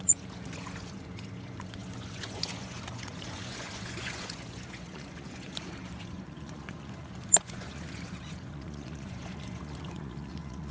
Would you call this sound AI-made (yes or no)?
yes